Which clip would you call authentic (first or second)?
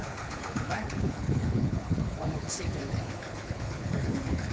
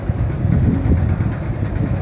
second